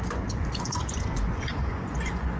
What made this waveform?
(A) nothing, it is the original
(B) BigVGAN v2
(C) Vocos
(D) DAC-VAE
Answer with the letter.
C